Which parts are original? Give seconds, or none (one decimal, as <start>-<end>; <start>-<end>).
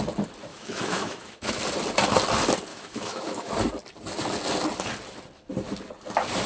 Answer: 0.0-0.5; 1.6-2.7; 3.5-6.5